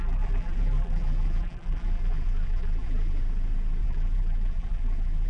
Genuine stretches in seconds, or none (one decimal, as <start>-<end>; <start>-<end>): 3.2-3.8